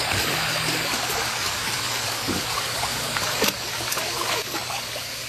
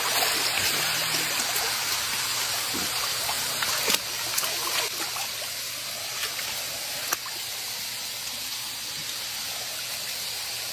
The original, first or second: second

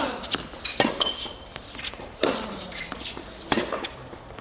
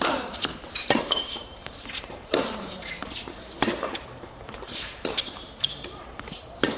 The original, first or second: first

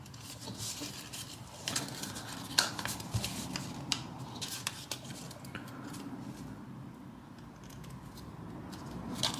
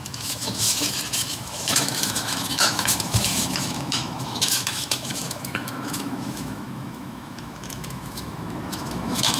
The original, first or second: first